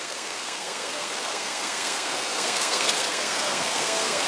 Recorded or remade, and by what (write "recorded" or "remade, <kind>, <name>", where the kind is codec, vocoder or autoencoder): remade, codec, SNAC